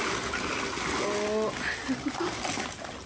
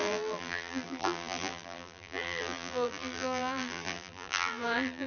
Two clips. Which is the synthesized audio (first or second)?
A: second